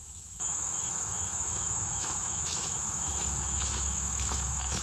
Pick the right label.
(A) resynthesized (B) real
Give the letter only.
A